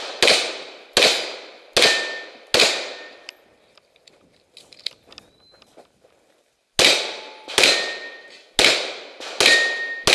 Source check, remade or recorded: recorded